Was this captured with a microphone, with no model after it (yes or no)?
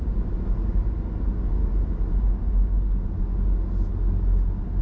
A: yes